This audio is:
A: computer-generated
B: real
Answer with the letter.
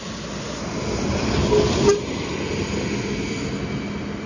B